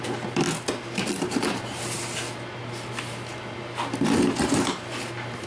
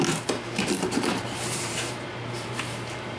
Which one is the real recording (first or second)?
first